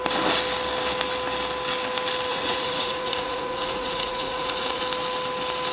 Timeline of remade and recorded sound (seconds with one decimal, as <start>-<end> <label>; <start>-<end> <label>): 0.0-2.3 recorded; 2.3-4.8 remade; 4.8-5.7 recorded